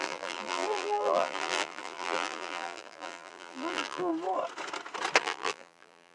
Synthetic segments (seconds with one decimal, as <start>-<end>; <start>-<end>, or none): 0.0-4.1; 5.2-6.1